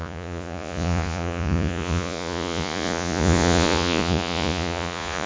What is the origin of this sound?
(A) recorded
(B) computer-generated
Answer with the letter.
B